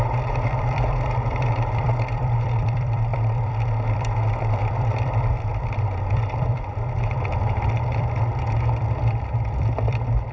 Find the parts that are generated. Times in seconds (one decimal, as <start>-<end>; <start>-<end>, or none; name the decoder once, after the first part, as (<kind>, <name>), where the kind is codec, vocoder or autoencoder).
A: 0.0-10.3 (vocoder, BigVGAN v2)